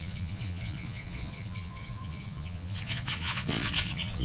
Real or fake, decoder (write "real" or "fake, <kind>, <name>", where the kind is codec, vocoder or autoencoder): fake, vocoder, Vocos